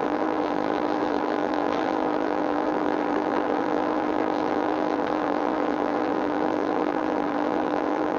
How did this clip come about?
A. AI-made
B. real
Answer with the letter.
A